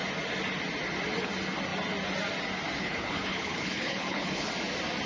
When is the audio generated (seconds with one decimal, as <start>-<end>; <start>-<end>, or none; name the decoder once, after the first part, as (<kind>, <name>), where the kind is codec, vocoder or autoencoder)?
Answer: 2.8-4.5 (codec, HILCodec)